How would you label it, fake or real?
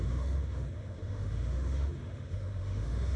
fake